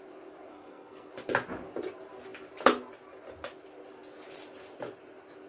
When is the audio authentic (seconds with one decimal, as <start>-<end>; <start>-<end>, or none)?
0.0-0.5; 1.1-5.5